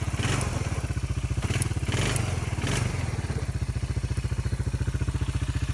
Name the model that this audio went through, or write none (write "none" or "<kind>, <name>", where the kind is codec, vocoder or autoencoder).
none